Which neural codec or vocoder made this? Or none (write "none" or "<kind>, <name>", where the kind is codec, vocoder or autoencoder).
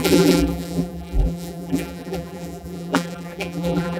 vocoder, BigVGAN v2